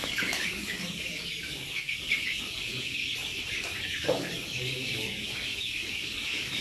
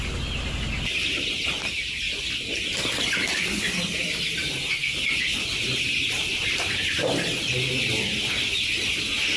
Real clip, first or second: second